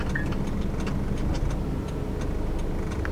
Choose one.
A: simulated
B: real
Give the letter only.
B